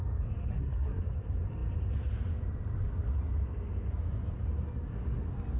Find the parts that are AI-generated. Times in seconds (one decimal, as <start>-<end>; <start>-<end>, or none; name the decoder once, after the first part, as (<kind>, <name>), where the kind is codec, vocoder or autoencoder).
0.5-1.0 (codec, SNAC)